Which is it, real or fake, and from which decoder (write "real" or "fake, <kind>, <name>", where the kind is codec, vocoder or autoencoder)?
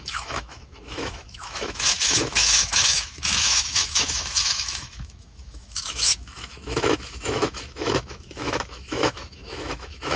fake, autoencoder, DAC-VAE